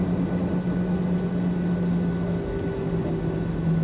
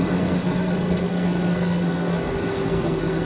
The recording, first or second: first